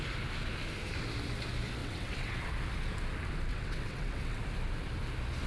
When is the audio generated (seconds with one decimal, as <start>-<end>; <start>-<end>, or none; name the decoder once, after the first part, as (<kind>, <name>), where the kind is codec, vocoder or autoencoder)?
1.8-2.4 (vocoder, WaveNeXt); 3.5-4.4

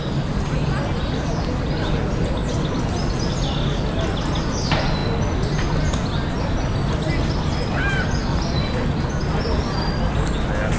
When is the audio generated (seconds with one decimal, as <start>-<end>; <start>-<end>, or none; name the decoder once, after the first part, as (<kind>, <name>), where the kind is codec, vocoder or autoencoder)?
none

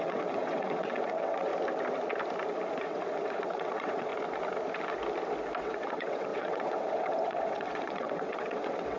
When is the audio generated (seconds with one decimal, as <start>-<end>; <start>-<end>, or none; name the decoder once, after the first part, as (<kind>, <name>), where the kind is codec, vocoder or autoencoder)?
0.0-1.5 (vocoder, WaveNeXt); 2.8-4.1; 5.6-9.0

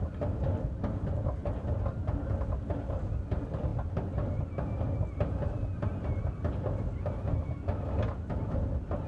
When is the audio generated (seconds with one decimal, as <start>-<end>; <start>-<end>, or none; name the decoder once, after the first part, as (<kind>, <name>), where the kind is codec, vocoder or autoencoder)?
none

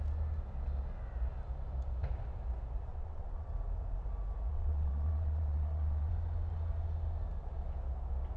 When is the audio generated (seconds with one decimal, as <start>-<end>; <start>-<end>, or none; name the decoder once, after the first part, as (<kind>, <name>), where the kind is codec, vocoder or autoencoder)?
2.9-3.5 (vocoder, WaveNeXt); 4.5-6.1

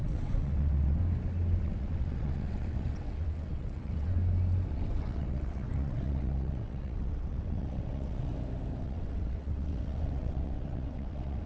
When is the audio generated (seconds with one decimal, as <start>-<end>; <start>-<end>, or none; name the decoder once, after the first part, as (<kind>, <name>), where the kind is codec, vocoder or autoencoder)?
0.0-1.0 (vocoder, WaveNeXt); 1.6-4.2; 4.7-8.3; 8.8-11.5

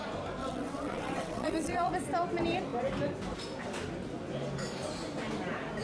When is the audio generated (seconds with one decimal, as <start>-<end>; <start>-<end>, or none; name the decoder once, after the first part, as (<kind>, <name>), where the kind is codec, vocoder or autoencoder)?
0.4-1.9 (vocoder, WaveNeXt)

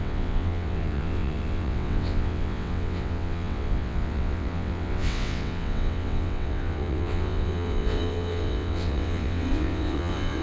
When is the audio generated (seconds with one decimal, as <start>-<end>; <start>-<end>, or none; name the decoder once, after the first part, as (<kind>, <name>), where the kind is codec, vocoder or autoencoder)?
0.0-10.4 (vocoder, WaveNeXt)